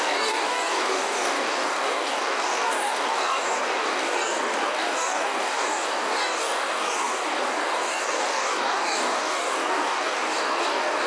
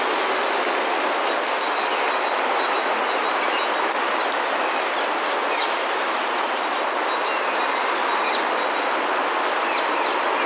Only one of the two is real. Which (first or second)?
second